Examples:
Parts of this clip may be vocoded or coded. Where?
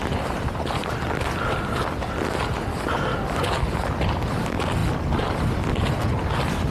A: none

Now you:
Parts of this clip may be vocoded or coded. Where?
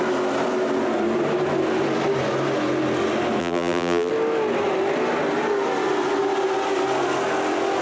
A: 3.4-4.1 (vocoder, BigVGAN v2)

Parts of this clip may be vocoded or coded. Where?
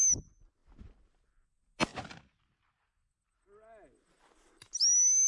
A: 0.6-1.3 (vocoder, BigVGAN v2)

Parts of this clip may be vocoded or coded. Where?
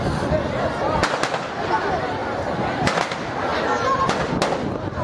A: none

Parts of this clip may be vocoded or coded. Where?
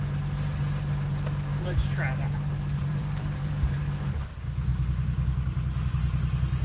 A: 1.5-2.0 (vocoder, BigVGAN v2); 2.9-3.8